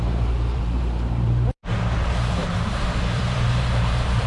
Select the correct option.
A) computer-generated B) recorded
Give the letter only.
A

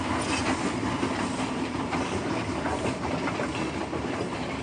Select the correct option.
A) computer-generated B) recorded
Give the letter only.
A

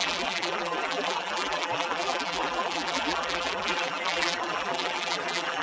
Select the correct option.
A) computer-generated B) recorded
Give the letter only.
A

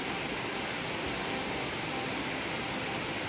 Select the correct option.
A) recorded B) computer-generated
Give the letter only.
A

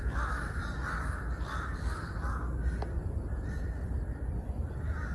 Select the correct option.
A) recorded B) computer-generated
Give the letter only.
A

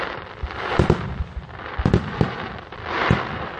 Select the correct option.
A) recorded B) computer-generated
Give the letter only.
B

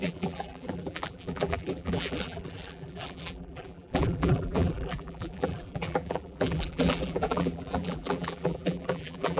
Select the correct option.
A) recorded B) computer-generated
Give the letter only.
B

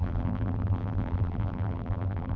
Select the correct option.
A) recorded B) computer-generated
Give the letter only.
B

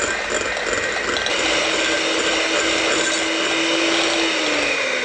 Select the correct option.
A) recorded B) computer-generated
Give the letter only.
A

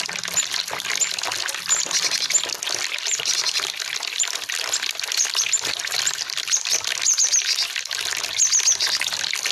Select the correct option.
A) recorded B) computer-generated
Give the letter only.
A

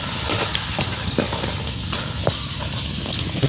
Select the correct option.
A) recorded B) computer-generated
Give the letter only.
A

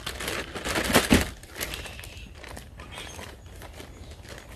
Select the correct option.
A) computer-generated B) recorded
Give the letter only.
B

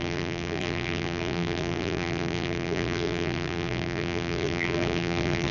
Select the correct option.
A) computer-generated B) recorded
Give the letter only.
A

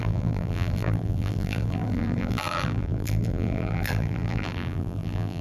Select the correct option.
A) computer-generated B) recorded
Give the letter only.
A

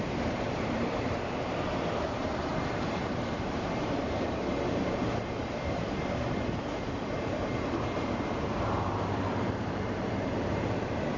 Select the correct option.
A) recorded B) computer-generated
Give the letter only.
B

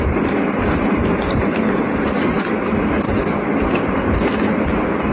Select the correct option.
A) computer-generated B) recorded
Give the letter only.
A